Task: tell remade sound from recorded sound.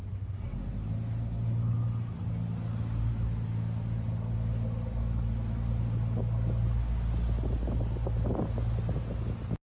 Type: recorded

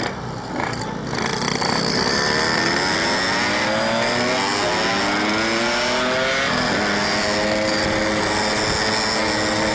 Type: recorded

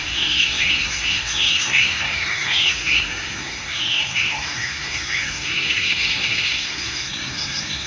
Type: remade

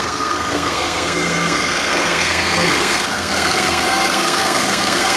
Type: remade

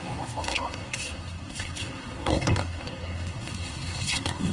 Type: remade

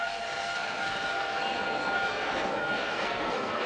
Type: remade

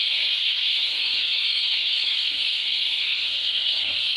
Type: remade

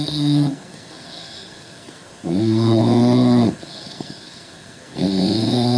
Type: remade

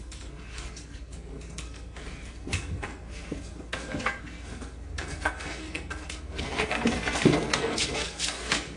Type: remade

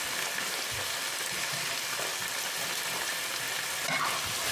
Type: recorded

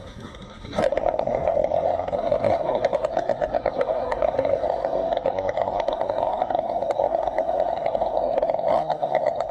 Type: remade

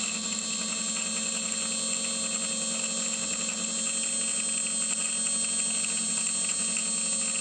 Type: recorded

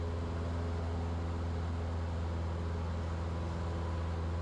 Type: recorded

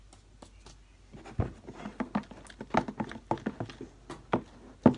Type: recorded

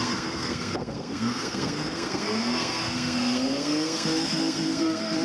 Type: remade